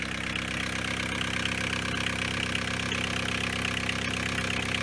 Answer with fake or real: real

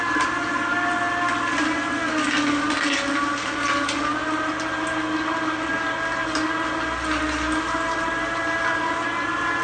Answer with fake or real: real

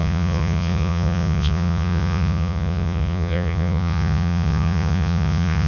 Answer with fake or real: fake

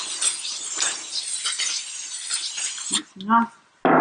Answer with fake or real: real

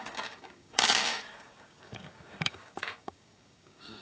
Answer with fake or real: fake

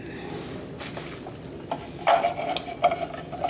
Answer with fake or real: real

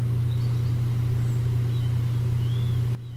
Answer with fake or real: real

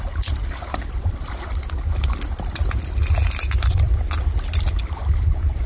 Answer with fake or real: real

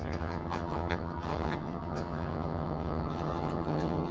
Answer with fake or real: fake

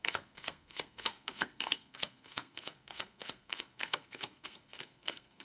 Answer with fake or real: fake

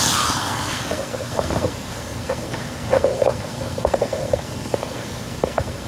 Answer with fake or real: fake